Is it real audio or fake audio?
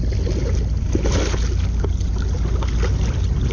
real